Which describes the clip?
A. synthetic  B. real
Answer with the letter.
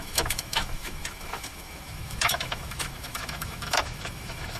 A